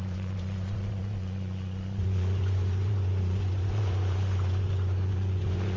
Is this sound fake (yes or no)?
yes